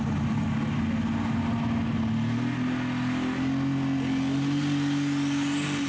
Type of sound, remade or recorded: recorded